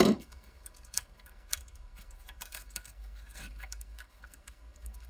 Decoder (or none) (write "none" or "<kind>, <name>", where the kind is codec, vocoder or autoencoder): codec, SNAC